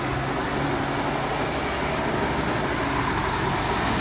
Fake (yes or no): no